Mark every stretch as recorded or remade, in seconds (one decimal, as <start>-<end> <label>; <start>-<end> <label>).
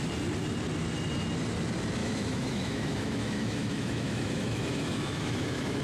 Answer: 0.0-2.0 recorded; 2.0-5.8 remade